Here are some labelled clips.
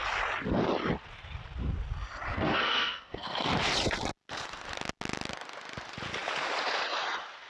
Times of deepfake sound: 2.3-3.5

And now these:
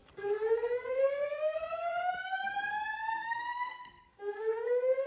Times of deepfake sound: 0.0-2.1; 3.0-5.1

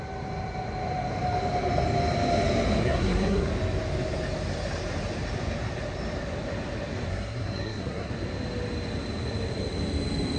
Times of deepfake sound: 2.8-3.5; 7.1-8.1

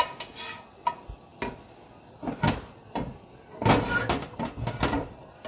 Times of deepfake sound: none

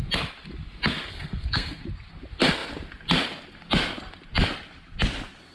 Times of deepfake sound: 1.1-1.8